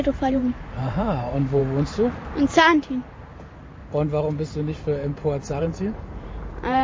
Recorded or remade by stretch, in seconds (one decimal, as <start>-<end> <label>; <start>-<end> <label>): 0.0-1.6 remade; 1.6-5.6 recorded; 5.6-6.8 remade